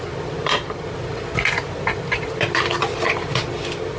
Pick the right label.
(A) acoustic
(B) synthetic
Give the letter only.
B